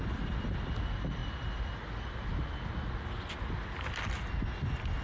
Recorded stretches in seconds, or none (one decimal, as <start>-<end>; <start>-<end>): 0.0-5.0